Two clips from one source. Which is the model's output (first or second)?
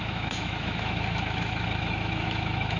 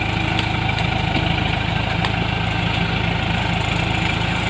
first